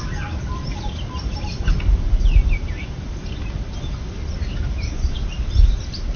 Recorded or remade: recorded